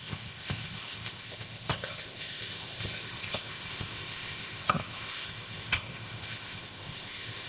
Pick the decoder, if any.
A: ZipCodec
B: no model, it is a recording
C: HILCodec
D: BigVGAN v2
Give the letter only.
A